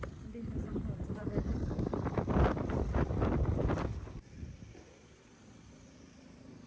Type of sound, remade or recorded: remade